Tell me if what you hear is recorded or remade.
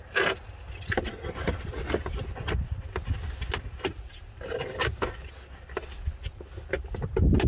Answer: recorded